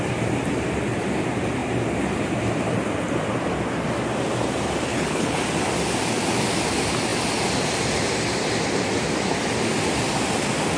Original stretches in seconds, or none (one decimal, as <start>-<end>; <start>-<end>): 0.0-4.9; 5.4-10.8